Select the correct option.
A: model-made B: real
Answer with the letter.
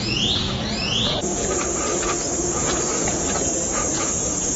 A